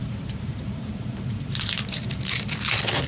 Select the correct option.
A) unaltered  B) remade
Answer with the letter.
B